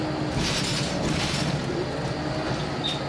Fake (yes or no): no